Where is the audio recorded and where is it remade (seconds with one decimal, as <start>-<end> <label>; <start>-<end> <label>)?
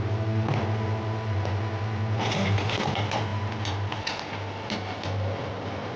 0.0-6.0 recorded